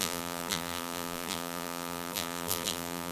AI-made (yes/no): yes